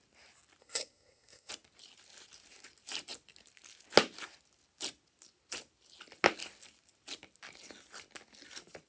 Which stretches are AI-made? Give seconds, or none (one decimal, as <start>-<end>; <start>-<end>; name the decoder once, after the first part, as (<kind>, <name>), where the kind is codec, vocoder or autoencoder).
0.6-1.5 (codec, SNAC)